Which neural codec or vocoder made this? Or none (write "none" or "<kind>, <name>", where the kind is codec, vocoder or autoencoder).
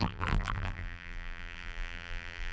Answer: vocoder, BigVGAN v2